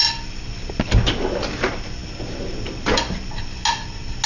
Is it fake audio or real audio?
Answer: real